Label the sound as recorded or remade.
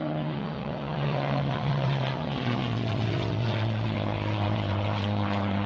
remade